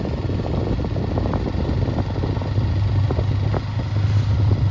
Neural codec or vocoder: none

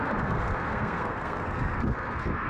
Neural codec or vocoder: codec, SNAC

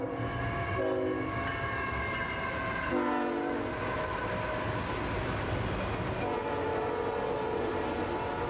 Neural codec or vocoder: none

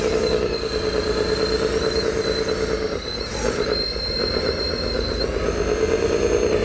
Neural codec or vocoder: none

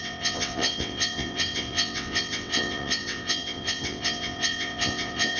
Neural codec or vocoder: vocoder, WaveNeXt